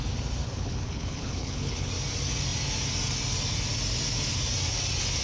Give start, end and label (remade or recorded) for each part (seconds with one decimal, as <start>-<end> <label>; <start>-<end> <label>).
0.0-0.4 recorded; 0.4-1.9 remade; 1.9-5.2 recorded